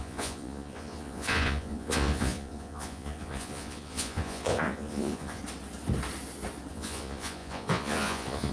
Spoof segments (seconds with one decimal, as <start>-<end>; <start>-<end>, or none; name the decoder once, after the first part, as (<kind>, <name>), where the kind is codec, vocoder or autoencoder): 0.0-5.4 (vocoder, Vocos); 6.7-8.5